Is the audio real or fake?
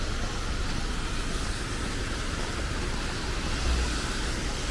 real